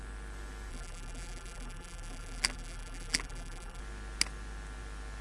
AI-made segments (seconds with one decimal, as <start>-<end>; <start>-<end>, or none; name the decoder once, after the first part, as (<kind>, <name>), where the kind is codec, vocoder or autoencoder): 0.7-3.8 (vocoder, BigVGAN v2)